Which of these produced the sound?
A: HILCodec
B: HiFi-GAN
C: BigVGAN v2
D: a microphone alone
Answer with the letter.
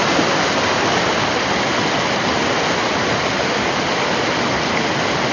D